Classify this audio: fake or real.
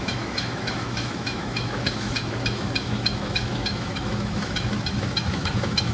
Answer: fake